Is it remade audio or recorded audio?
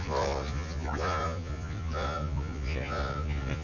remade